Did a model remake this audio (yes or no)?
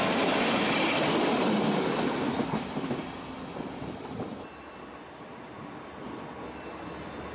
no